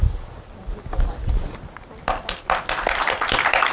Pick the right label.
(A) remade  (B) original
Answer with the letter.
B